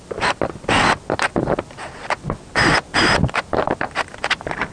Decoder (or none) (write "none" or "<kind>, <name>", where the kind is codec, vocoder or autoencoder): none